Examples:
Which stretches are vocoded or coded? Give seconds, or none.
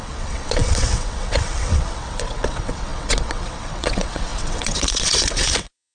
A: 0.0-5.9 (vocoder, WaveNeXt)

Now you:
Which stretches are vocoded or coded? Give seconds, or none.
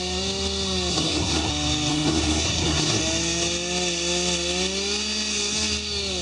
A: 0.9-1.5 (codec, SNAC); 1.9-3.0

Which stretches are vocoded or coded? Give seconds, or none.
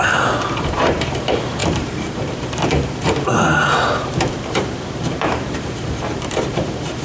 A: 0.0-7.0 (vocoder, BigVGAN v2)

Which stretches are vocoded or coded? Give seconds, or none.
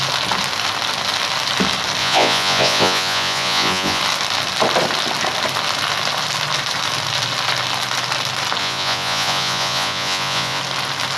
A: 2.0-4.0 (vocoder, Vocos); 8.6-10.6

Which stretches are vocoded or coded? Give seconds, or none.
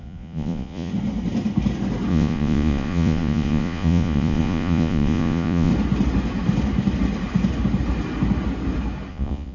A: 0.0-0.9 (vocoder, Vocos); 2.1-5.7; 9.1-9.5